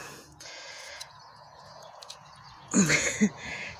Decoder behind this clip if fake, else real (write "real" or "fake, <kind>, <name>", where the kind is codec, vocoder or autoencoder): fake, vocoder, Vocos